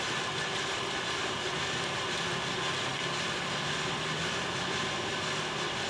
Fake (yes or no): no